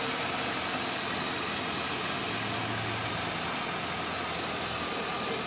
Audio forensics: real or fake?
real